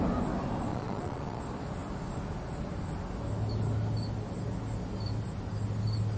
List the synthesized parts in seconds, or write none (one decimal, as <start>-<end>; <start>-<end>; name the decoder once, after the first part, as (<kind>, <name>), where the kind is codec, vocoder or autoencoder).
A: 0.7-1.4 (vocoder, Vocos)